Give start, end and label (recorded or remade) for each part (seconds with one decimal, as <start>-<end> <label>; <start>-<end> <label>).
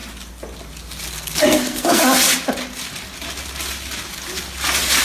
0.0-1.1 recorded; 1.1-2.0 remade; 2.0-5.0 recorded